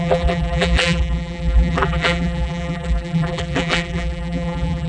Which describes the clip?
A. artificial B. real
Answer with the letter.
A